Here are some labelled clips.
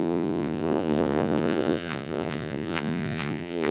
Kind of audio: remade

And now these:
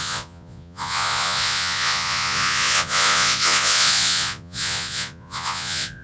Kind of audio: remade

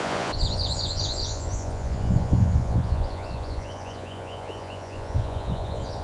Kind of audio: remade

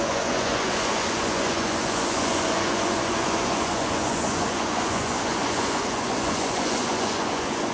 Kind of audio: remade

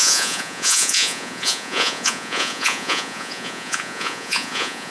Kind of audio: remade